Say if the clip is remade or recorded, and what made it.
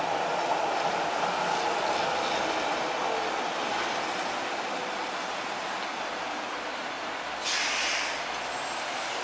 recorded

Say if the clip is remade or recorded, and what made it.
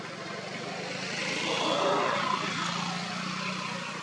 recorded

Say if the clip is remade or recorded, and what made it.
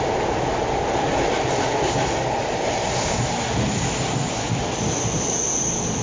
recorded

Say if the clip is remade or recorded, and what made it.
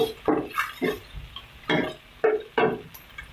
recorded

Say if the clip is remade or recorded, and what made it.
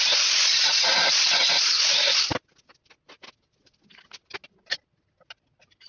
recorded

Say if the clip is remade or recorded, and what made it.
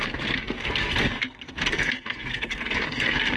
remade, codec, SNAC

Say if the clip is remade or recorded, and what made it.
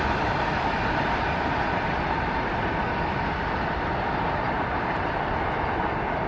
recorded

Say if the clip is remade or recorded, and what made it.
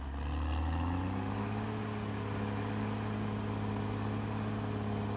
recorded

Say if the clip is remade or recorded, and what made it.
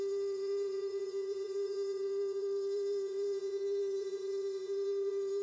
remade, vocoder, Vocos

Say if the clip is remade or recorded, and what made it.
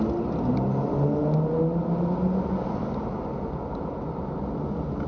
recorded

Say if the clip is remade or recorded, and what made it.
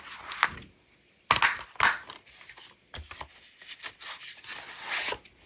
recorded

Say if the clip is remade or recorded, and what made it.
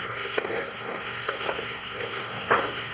remade, codec, SNAC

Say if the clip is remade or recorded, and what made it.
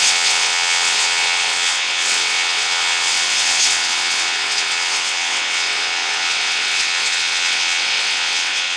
remade, vocoder, WaveNeXt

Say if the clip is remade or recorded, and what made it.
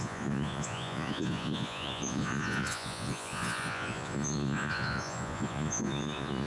remade, vocoder, Vocos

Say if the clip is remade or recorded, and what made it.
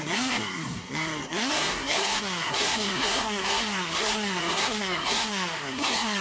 remade, codec, SNAC